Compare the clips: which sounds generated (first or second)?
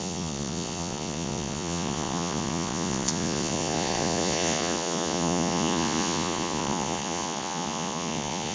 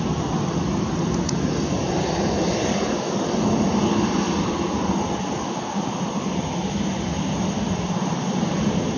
first